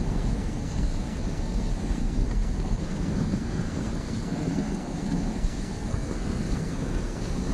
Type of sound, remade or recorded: remade